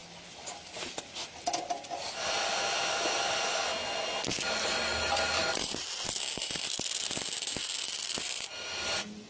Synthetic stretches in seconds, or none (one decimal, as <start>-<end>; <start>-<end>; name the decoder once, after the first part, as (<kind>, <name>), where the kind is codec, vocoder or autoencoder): none